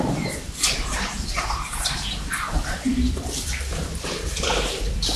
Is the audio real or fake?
fake